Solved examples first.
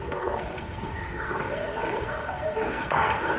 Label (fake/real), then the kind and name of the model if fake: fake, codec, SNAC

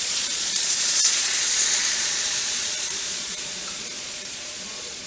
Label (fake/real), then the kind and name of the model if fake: fake, vocoder, Vocos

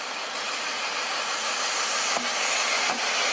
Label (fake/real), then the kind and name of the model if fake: real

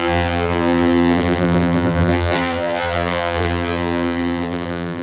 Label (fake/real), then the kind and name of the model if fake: fake, vocoder, BigVGAN v2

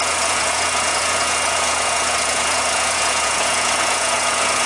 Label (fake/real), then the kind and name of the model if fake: fake, vocoder, Vocos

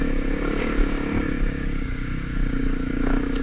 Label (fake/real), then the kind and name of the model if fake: fake, codec, DAC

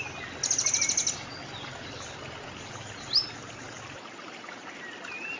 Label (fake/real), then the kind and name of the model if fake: real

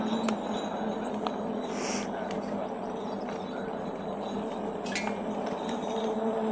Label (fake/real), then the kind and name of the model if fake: real